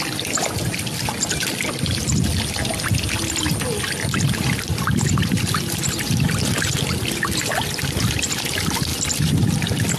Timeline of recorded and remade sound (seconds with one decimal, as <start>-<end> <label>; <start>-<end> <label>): 0.0-10.0 recorded

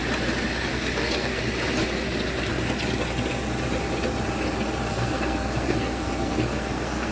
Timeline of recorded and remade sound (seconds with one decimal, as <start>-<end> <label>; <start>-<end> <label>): 0.0-0.7 recorded; 0.7-1.4 remade; 1.4-4.9 recorded; 4.9-7.1 remade